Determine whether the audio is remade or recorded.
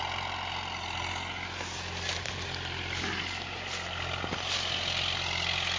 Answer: recorded